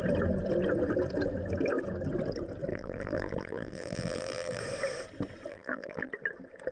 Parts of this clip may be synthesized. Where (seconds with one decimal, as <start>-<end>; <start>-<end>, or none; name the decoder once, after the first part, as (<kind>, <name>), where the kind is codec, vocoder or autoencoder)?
2.7-4.6 (vocoder, BigVGAN v2); 5.5-6.1